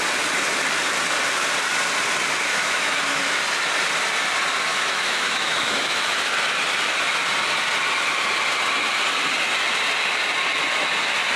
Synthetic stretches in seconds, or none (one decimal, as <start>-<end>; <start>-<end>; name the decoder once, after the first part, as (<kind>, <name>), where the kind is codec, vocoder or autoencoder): 2.5-3.4 (autoencoder, DAC-VAE); 4.7-6.3